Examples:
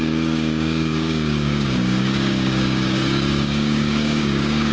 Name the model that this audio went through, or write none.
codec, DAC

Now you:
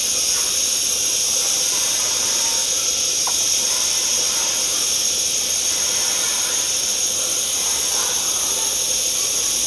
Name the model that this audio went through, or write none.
none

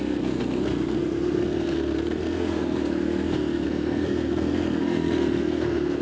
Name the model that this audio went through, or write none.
codec, SNAC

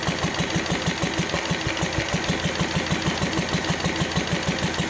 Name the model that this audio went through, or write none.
none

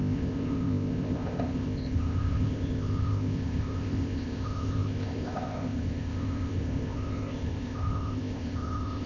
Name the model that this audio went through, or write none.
codec, ZipCodec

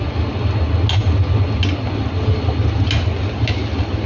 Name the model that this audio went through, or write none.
none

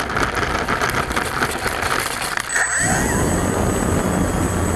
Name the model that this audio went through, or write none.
none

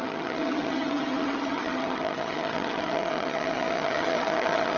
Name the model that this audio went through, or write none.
vocoder, HiFi-GAN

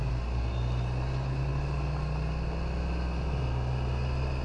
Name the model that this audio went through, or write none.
none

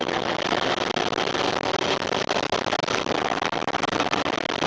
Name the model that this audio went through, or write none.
none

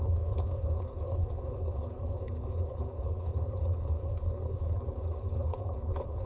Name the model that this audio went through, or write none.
codec, HILCodec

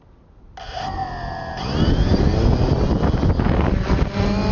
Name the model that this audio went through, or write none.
none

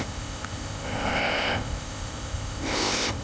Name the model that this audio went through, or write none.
codec, ZipCodec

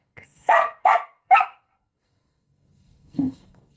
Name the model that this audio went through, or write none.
codec, SNAC